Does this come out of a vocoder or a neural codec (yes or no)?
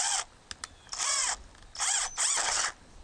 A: no